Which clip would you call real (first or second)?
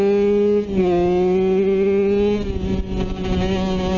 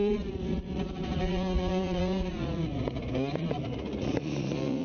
first